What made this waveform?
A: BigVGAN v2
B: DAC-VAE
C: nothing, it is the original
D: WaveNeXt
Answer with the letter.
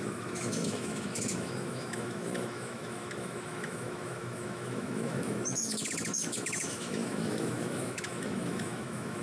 B